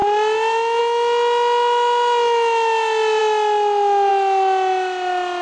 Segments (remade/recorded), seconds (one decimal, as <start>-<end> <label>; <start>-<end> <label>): 0.0-5.4 recorded